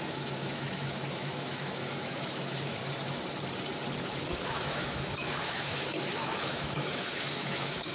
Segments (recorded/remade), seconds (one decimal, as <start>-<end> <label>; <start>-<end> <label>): 0.0-2.8 remade; 2.8-4.2 recorded; 4.2-7.9 remade